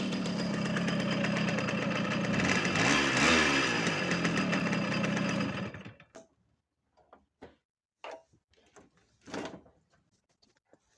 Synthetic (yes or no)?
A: no